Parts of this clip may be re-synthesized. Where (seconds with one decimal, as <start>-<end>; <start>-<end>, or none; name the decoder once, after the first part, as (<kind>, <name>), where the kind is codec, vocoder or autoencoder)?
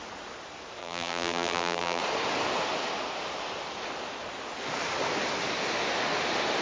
0.8-2.0 (vocoder, BigVGAN v2)